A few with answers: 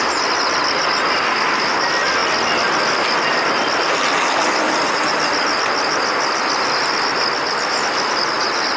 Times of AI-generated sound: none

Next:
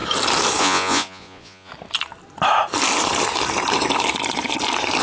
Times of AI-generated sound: 0.6-1.7 (vocoder, Vocos)